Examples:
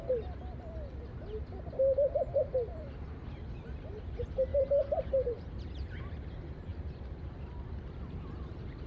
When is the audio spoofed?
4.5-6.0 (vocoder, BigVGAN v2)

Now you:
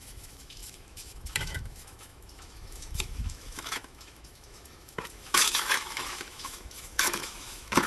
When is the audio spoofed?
0.0-7.9 (autoencoder, DAC-VAE)

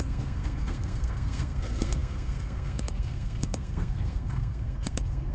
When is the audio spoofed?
0.0-5.3 (codec, SNAC)

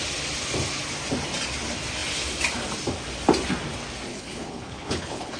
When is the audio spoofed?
4.1-5.4 (codec, HILCodec)

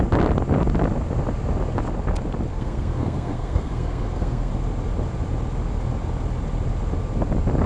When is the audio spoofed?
2.5-4.5 (codec, SNAC)

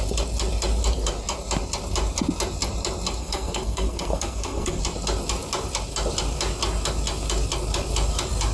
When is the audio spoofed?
3.2-4.8 (codec, SNAC)